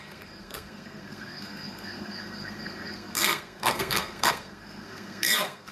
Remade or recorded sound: remade